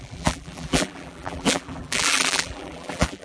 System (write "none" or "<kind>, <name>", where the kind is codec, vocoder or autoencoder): vocoder, BigVGAN v2